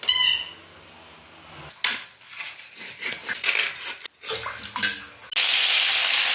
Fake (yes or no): no